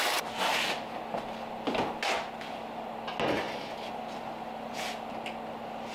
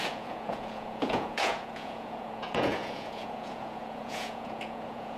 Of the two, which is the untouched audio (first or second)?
first